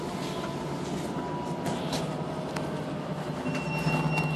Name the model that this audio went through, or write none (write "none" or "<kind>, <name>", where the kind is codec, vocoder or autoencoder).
none